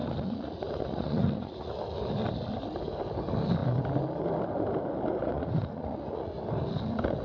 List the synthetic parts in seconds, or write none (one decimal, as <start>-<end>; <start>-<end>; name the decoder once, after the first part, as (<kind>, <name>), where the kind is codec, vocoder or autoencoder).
0.0-1.8 (vocoder, Vocos); 5.2-6.3

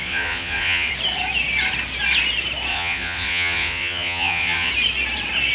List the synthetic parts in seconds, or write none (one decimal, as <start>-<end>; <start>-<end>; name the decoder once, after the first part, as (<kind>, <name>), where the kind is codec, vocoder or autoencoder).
0.0-0.9 (vocoder, Vocos); 2.7-4.7

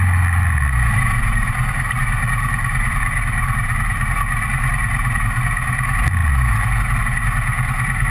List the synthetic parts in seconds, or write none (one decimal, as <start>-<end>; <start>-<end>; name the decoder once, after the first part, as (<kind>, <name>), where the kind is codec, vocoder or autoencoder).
none

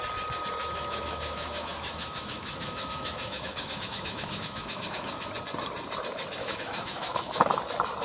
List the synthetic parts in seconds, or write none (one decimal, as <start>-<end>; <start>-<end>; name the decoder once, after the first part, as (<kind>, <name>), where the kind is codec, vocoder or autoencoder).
0.6-5.3 (autoencoder, DAC-VAE); 6.4-7.4

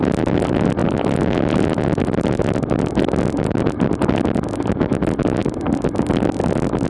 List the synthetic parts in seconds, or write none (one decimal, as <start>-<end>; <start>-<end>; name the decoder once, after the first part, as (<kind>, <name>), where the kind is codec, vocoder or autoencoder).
none

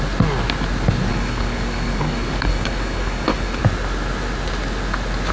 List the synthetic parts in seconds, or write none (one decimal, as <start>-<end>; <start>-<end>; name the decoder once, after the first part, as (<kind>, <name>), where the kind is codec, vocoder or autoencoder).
1.1-3.6 (codec, DAC)

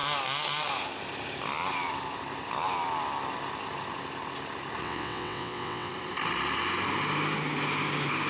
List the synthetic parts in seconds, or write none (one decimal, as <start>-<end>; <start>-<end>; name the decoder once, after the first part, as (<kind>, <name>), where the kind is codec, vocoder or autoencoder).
4.8-5.9 (vocoder, WaveNeXt)

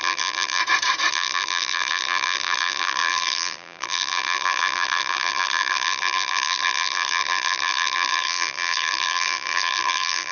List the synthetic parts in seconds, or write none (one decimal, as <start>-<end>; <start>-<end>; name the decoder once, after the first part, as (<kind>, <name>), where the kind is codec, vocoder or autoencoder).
0.0-0.6 (vocoder, BigVGAN v2); 1.1-10.3